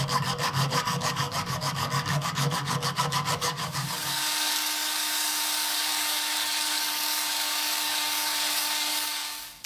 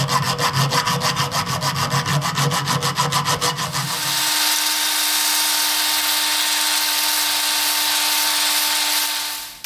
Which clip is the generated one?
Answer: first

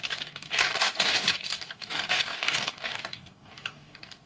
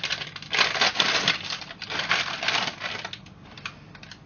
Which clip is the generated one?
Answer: first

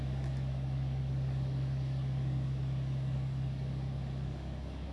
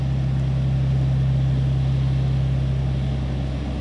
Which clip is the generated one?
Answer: first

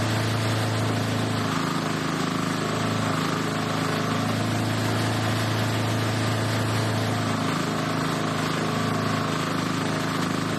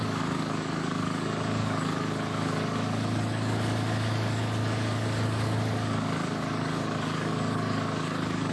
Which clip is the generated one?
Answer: second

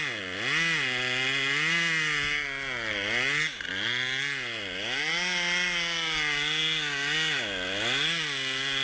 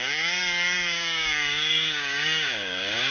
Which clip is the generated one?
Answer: second